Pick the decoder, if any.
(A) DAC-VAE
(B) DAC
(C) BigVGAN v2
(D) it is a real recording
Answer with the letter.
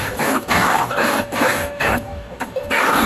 B